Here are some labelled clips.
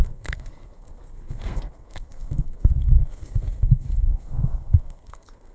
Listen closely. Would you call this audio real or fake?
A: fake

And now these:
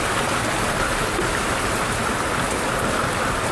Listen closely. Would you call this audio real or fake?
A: real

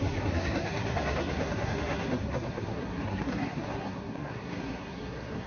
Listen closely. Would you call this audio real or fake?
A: fake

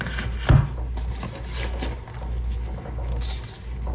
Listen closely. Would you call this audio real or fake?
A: real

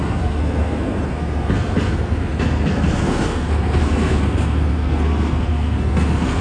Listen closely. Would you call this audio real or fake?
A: fake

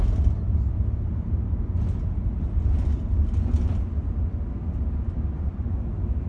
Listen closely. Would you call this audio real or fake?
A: real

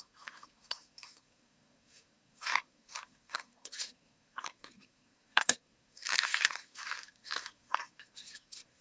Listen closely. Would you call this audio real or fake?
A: fake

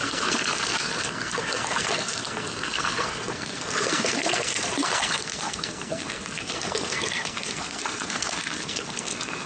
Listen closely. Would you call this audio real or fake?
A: fake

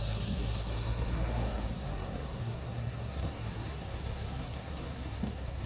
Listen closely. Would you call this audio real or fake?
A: fake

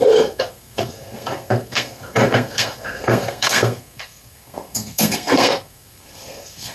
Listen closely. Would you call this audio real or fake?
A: fake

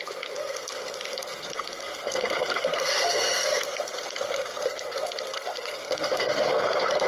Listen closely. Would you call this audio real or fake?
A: fake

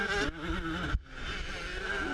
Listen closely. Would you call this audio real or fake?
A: real